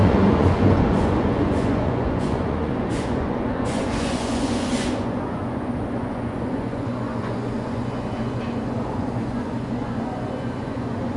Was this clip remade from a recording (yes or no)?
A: yes